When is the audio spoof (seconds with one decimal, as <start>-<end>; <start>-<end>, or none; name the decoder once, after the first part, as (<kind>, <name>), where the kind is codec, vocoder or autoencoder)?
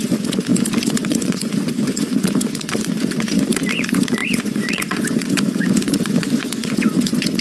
0.0-7.4 (vocoder, Vocos)